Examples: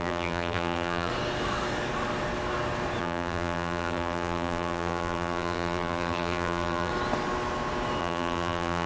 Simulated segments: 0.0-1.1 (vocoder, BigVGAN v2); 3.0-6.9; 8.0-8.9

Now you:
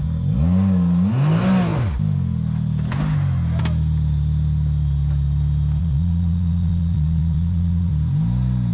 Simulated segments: 5.8-7.9 (vocoder, Vocos)